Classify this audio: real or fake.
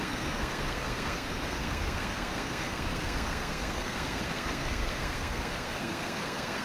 fake